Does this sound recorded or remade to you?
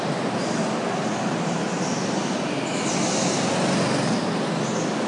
recorded